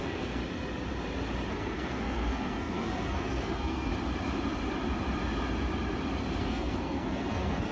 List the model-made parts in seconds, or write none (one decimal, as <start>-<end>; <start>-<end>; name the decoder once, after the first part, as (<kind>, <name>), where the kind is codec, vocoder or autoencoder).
0.0-0.4 (codec, SNAC); 1.5-3.9; 6.4-7.7